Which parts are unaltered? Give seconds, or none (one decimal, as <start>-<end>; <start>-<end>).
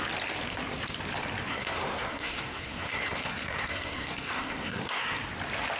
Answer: 0.0-1.5; 5.0-5.8